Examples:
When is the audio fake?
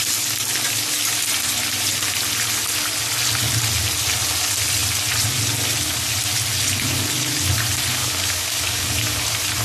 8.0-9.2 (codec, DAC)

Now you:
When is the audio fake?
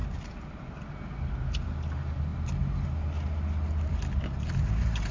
none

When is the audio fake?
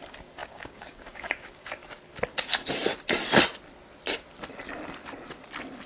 0.4-1.8 (codec, DAC)